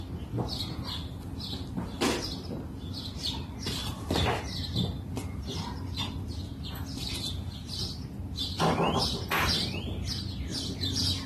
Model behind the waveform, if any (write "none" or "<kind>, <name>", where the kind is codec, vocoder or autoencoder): none